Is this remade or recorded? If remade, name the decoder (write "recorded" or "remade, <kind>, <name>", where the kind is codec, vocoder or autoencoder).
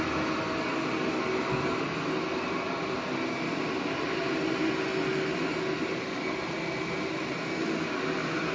recorded